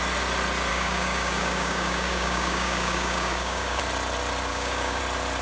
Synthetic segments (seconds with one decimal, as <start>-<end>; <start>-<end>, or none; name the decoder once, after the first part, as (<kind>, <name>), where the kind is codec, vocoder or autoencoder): 0.7-3.8 (codec, DAC); 4.5-5.0